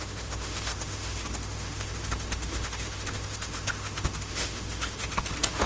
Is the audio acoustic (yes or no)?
no